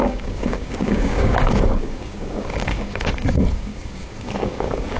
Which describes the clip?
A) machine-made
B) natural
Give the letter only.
A